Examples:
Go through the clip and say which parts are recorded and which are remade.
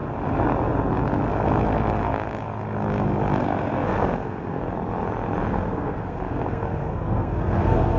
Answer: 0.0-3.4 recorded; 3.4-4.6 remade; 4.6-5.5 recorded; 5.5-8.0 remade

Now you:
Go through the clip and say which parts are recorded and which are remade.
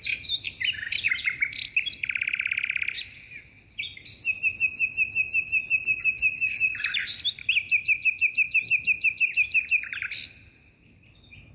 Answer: 0.0-11.5 recorded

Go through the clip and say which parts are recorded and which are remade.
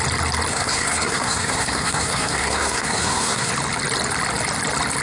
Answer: 0.0-0.5 recorded; 0.5-3.5 remade; 3.5-5.0 recorded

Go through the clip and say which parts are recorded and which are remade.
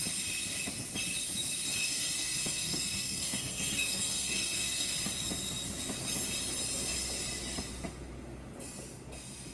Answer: 0.0-1.8 recorded; 1.8-5.1 remade; 5.1-9.5 recorded